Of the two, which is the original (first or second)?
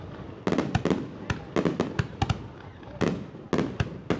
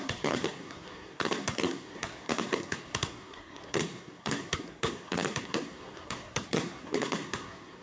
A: first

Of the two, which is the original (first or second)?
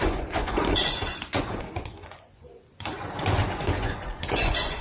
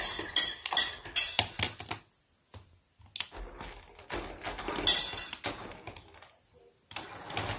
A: second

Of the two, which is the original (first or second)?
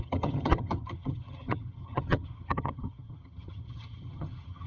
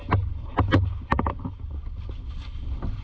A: second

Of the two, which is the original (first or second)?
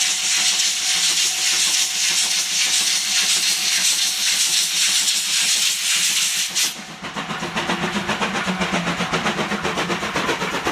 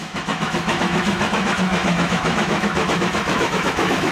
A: first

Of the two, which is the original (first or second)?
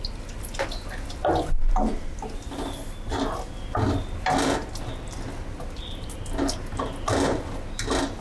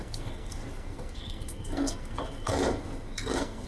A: first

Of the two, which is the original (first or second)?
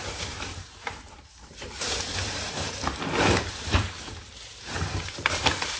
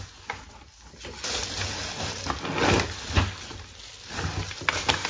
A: second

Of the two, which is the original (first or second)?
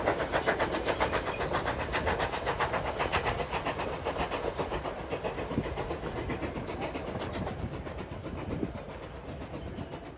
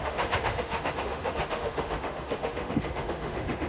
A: first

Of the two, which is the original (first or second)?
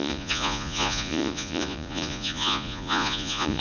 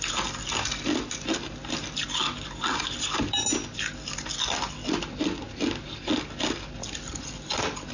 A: second